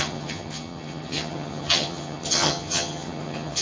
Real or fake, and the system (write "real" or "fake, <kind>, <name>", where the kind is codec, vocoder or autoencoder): fake, vocoder, HiFi-GAN